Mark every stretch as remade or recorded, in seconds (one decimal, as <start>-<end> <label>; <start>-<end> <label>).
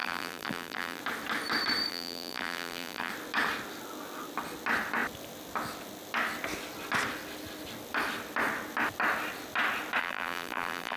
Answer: 0.0-1.0 remade; 1.0-1.9 recorded; 1.9-3.1 remade; 3.1-10.0 recorded; 10.0-11.0 remade